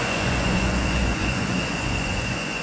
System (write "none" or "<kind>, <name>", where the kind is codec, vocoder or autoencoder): vocoder, Vocos